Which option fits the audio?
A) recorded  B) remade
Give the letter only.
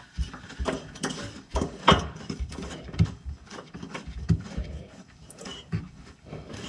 B